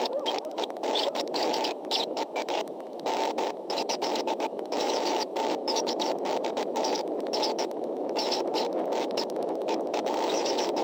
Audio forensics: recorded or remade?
remade